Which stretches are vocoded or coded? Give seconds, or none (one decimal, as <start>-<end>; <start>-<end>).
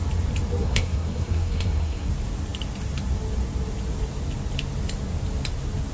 0.6-2.1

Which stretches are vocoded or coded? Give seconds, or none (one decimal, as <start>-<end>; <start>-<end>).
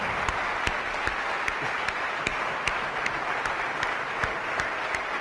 none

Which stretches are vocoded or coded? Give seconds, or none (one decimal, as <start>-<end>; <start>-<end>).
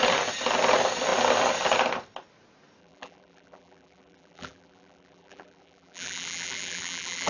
2.8-7.3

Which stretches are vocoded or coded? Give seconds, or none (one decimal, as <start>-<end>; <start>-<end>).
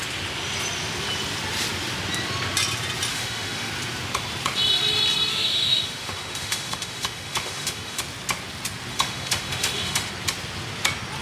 3.1-3.7; 5.3-8.0; 8.9-10.1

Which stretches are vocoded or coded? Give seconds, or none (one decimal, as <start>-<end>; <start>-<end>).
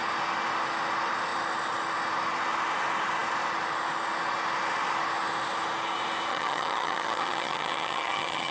6.3-8.5